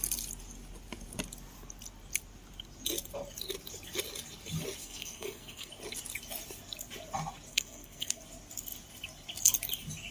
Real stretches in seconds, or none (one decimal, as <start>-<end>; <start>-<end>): 0.0-4.8; 5.7-7.5; 8.2-10.1

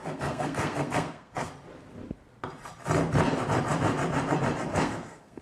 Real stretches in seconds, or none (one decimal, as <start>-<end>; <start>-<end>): 1.5-4.7